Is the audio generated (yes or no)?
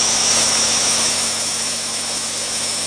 yes